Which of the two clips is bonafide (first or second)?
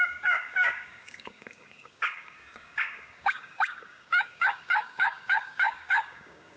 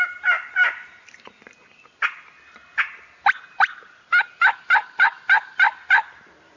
second